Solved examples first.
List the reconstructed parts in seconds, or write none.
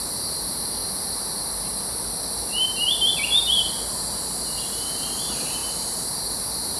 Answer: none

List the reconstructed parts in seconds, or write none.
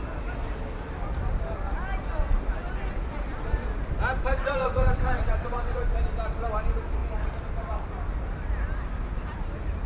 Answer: 4.3-5.8 (vocoder, WaveNeXt)